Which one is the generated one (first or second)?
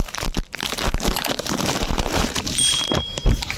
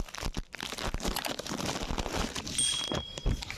first